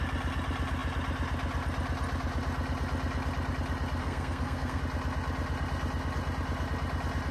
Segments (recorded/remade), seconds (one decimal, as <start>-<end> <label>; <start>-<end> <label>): 0.0-4.0 recorded; 4.0-4.8 remade; 4.8-7.3 recorded